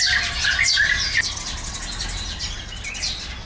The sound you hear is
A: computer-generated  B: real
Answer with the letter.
B